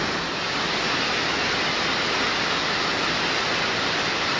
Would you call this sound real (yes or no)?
yes